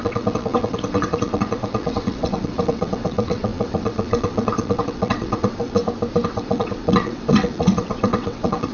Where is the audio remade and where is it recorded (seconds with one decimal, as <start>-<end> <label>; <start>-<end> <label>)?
0.0-5.8 remade; 5.8-6.3 recorded; 6.3-8.7 remade